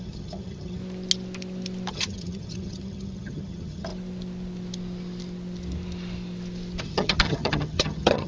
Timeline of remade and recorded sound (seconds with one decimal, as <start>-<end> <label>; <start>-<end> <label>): 0.0-0.8 remade; 0.8-1.9 recorded; 1.9-3.9 remade; 3.9-6.8 recorded; 6.8-8.3 remade